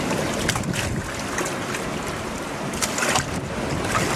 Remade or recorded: recorded